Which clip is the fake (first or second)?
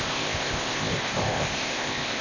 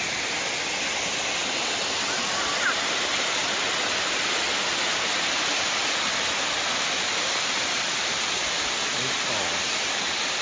first